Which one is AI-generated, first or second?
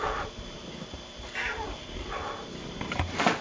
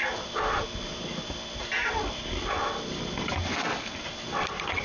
first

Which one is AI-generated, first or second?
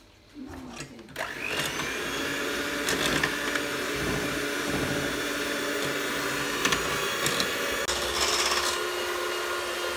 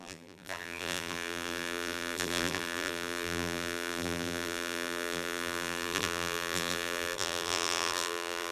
second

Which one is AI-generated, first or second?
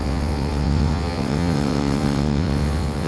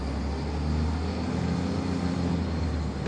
first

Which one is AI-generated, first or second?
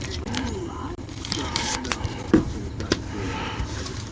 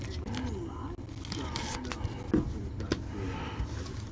first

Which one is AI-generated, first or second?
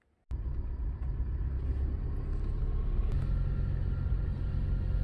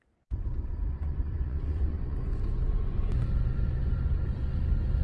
second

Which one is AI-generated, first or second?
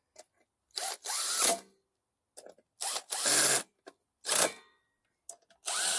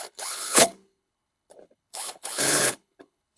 second